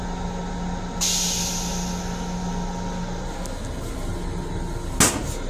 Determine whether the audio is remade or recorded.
recorded